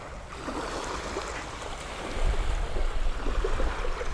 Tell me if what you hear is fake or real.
real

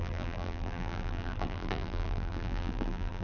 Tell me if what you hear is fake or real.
fake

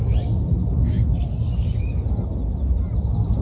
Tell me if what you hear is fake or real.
real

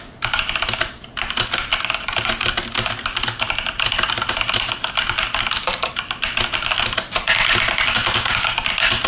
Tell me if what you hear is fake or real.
real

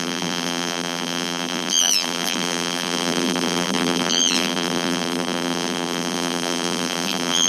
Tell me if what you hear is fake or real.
fake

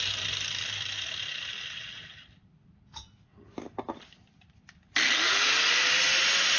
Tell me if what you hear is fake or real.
real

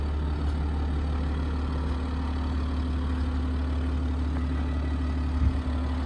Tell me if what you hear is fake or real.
real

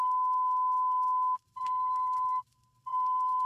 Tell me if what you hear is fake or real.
real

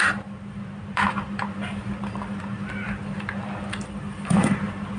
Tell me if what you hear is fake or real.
fake